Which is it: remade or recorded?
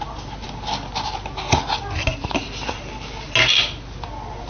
recorded